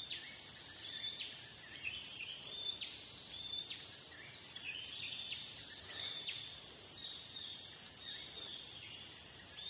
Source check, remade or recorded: remade